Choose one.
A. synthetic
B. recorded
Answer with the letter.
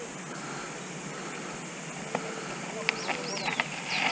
B